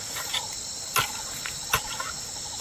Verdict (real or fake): real